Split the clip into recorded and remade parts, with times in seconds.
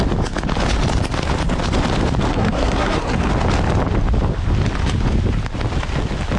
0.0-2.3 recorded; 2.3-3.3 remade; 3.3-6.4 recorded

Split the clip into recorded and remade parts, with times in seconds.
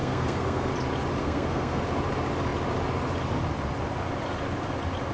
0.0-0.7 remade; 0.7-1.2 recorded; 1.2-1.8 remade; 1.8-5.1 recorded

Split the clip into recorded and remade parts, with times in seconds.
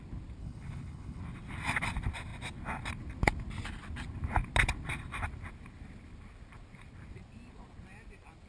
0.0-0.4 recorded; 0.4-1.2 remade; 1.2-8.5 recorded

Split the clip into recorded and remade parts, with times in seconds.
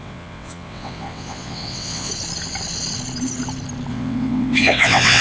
0.0-2.1 remade; 2.1-3.9 recorded; 3.9-5.2 remade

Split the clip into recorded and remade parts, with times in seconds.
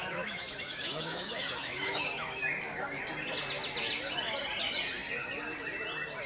0.0-2.4 remade; 2.4-6.3 recorded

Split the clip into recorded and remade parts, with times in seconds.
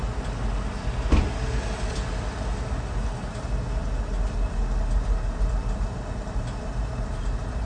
0.0-7.7 recorded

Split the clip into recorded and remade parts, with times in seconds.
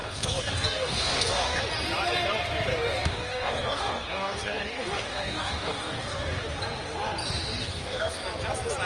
0.0-1.6 remade; 1.6-2.7 recorded; 2.7-6.5 remade; 6.5-7.6 recorded; 7.6-8.2 remade; 8.2-8.9 recorded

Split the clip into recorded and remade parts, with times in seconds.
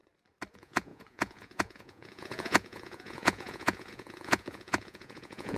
0.0-0.5 recorded; 0.5-5.6 remade